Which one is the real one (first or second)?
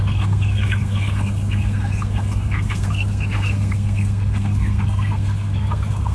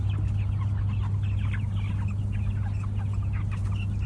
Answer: second